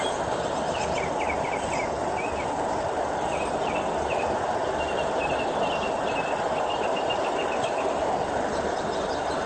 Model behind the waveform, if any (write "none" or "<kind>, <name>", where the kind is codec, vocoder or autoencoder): none